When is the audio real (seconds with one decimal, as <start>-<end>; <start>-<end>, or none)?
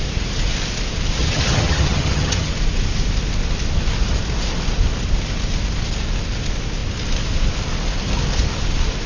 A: 0.0-1.2; 2.5-9.1